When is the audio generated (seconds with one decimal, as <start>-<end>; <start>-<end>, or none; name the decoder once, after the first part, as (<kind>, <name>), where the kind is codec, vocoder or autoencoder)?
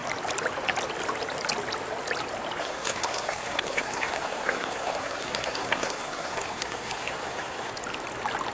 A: 2.6-7.7 (codec, SNAC)